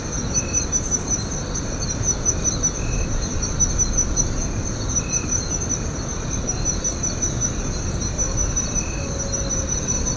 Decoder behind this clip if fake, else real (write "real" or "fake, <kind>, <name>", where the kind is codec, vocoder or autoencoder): real